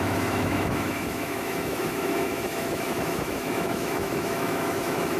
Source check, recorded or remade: remade